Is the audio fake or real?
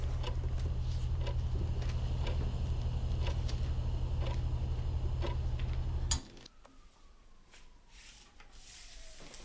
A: real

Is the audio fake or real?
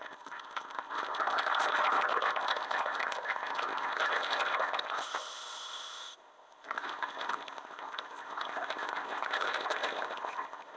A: fake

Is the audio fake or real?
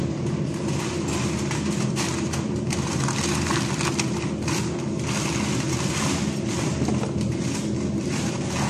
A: real